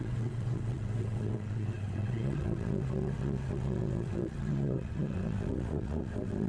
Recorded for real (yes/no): no